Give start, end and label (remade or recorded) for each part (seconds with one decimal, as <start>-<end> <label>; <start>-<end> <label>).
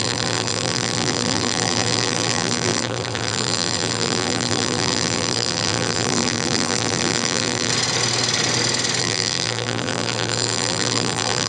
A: 0.0-7.7 remade; 7.7-9.0 recorded; 9.0-11.5 remade